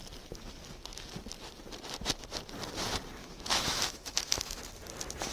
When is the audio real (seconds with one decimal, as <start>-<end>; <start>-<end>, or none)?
0.0-3.2; 4.6-5.3